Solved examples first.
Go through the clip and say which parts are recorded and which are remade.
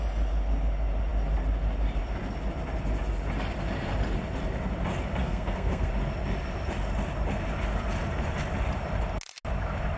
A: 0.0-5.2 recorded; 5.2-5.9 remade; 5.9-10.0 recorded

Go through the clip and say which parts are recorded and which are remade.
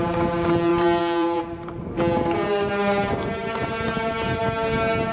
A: 0.0-0.7 recorded; 0.7-1.4 remade; 1.4-5.1 recorded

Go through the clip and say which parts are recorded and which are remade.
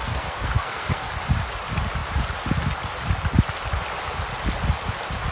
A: 0.0-1.1 remade; 1.1-5.3 recorded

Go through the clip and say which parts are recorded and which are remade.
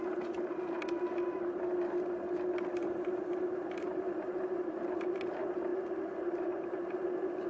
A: 0.0-7.5 recorded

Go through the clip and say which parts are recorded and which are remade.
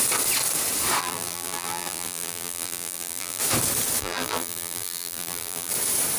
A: 0.0-1.0 recorded; 1.0-3.4 remade; 3.4-4.0 recorded; 4.0-5.7 remade; 5.7-6.2 recorded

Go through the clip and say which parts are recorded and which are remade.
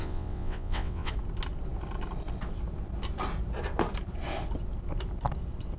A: 0.0-1.1 remade; 1.1-5.8 recorded